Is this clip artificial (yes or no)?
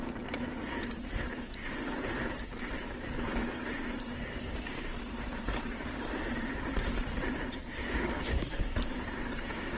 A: yes